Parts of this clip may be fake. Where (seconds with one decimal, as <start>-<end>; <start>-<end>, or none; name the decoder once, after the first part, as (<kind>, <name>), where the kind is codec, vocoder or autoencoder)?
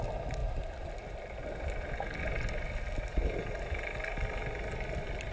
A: none